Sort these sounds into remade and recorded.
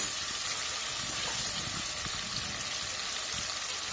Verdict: recorded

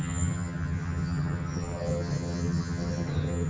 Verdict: remade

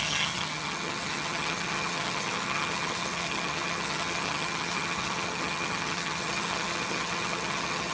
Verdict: remade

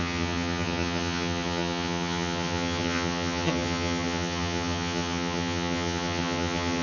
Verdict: remade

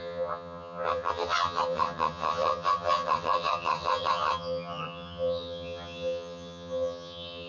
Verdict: remade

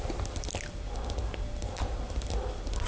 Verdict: recorded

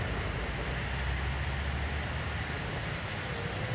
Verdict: recorded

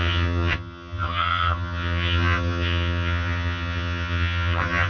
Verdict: remade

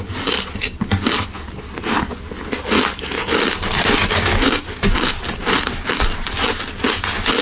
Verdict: recorded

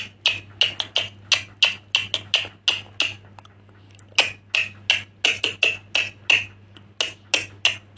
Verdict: recorded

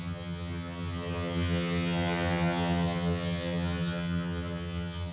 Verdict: remade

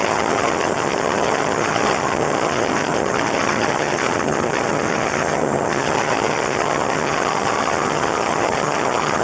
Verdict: remade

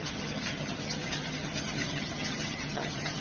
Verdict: remade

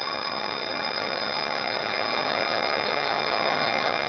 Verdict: remade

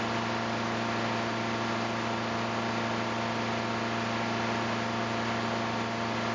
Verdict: recorded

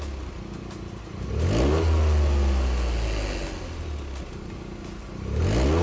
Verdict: recorded